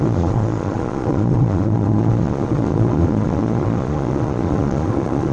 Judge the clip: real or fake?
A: fake